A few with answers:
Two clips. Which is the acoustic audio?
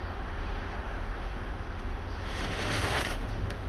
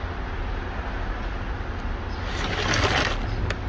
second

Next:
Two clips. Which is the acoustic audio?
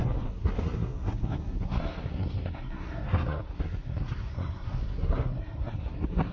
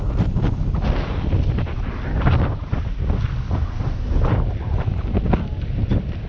second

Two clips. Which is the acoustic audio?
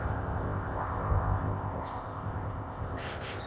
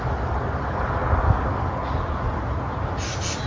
second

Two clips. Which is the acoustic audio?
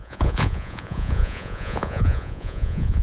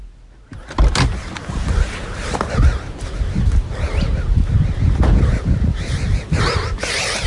second